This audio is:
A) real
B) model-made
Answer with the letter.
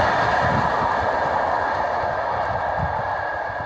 A